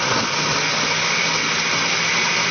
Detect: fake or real real